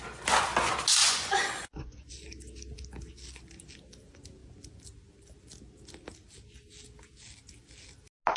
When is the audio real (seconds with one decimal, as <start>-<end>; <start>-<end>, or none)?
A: 0.0-1.0; 2.1-8.4